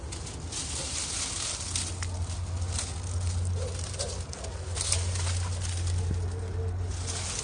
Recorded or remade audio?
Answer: recorded